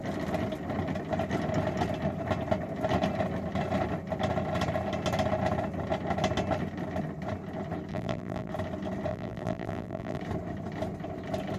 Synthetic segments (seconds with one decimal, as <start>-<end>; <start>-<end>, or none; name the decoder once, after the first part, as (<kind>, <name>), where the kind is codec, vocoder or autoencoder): 7.9-8.5 (vocoder, BigVGAN v2); 9.1-10.2